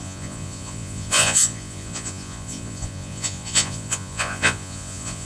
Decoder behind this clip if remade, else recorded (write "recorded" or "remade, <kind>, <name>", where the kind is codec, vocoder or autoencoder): remade, vocoder, Vocos